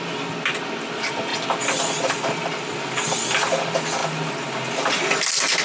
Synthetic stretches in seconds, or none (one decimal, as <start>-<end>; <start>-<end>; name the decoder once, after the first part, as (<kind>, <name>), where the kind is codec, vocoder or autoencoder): none

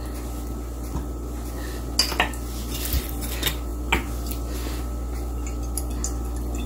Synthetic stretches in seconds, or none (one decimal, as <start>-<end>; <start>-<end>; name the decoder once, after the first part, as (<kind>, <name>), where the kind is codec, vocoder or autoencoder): none

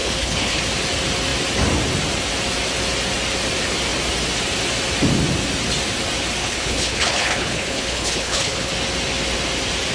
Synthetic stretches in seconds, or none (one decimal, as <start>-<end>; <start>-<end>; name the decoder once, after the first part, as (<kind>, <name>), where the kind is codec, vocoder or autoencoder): 0.0-0.6 (codec, HILCodec); 6.4-8.7

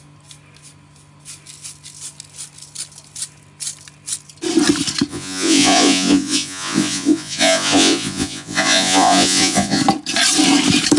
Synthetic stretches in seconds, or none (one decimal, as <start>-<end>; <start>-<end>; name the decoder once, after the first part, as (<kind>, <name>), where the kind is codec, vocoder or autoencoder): 5.1-9.8 (vocoder, Vocos)

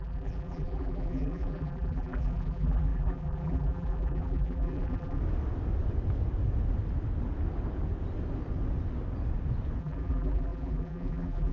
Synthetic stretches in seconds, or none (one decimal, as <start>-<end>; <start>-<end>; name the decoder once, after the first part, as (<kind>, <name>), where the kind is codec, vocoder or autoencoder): 0.0-5.2 (vocoder, BigVGAN v2); 9.8-11.5